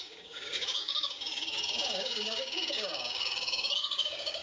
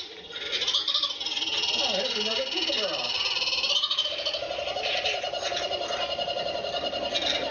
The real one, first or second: second